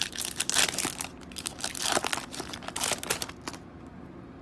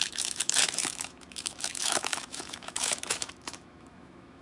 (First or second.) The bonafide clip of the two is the first